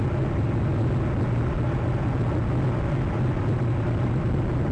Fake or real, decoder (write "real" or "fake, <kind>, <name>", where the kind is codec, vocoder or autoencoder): real